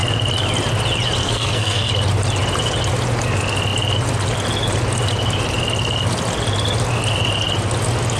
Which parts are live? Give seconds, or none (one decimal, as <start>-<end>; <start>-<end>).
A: 0.0-1.2; 1.9-8.2